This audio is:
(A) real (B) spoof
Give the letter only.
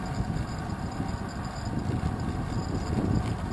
A